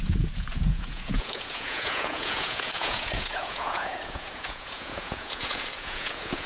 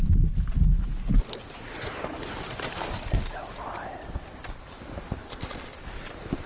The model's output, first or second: first